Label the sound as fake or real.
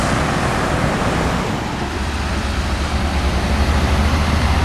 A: real